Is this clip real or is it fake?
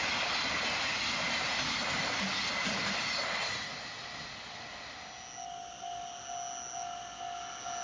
real